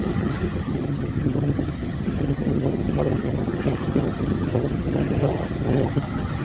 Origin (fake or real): fake